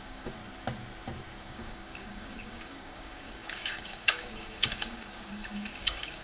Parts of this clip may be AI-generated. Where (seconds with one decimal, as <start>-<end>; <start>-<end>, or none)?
0.0-0.4; 1.4-6.2